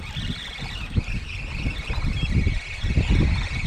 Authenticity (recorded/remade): recorded